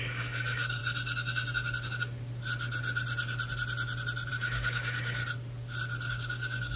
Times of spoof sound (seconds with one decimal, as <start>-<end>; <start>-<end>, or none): 0.0-0.8; 4.3-5.2; 6.1-6.8